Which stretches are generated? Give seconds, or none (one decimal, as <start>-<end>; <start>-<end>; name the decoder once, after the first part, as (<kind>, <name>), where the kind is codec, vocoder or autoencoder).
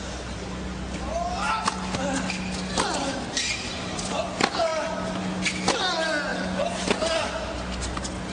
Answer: none